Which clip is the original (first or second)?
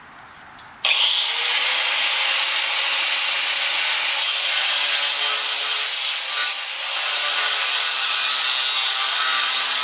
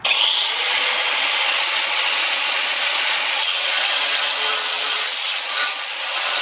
first